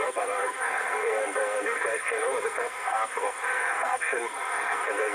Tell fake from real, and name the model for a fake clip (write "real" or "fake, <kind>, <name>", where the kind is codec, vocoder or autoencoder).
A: fake, codec, SNAC